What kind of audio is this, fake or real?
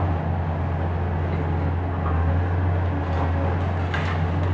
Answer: real